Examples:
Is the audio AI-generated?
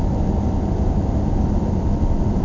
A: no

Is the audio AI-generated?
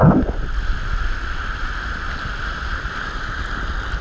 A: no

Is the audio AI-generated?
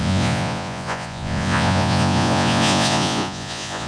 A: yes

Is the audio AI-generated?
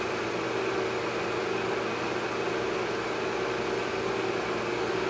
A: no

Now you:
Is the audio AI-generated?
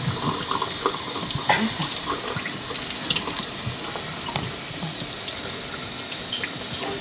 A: no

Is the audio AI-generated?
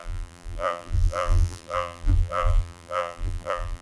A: yes